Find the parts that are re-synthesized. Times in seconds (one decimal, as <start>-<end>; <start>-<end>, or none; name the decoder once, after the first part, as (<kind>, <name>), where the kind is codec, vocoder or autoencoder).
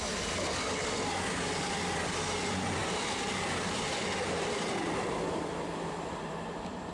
2.8-6.9 (vocoder, BigVGAN v2)